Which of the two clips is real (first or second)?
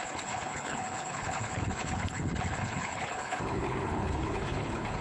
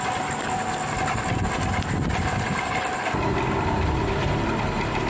second